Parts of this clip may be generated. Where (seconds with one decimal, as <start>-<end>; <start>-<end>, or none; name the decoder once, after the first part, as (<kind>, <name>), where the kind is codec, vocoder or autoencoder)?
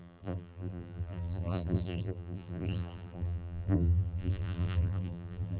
0.0-5.6 (vocoder, BigVGAN v2)